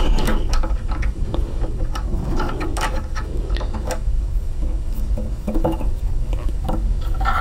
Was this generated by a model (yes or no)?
yes